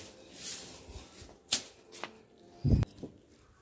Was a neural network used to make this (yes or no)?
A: no